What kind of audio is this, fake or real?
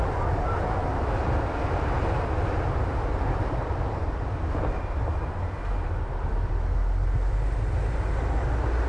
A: real